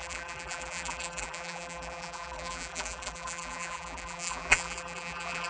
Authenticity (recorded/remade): remade